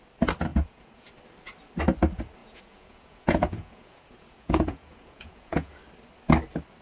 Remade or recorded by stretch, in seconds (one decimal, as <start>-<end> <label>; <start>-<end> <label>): 0.0-0.5 recorded; 0.5-1.1 remade; 1.1-2.4 recorded; 2.4-5.8 remade; 5.8-6.8 recorded